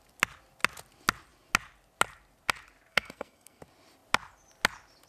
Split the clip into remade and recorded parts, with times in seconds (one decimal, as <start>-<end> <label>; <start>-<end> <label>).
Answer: 0.0-2.9 recorded; 2.9-3.6 remade; 3.6-5.1 recorded